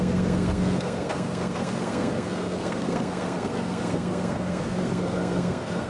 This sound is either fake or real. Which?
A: fake